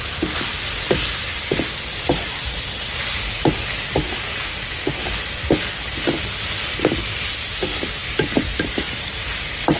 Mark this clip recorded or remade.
recorded